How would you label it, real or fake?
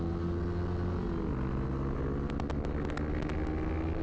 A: real